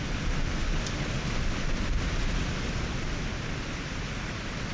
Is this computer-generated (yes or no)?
no